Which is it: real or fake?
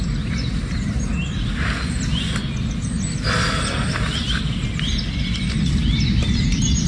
real